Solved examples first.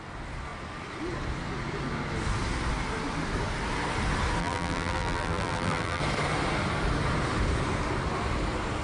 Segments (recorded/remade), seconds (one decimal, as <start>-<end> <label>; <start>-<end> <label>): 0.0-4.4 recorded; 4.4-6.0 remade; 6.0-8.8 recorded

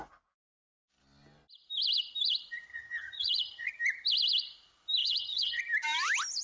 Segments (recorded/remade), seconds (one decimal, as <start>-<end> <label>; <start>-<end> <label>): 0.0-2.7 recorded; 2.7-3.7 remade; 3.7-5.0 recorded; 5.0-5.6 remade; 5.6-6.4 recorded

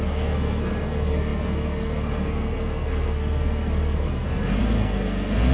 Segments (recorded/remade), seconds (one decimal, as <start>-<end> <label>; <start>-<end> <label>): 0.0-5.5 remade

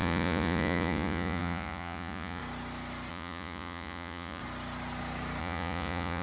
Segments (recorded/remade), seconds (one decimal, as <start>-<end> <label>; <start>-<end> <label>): 0.0-2.4 remade; 2.4-3.1 recorded; 3.1-4.4 remade; 4.4-5.4 recorded; 5.4-6.2 remade